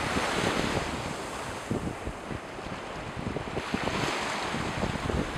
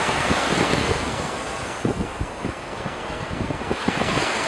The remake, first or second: second